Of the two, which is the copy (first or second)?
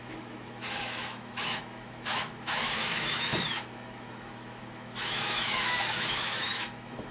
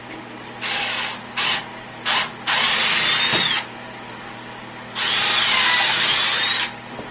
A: first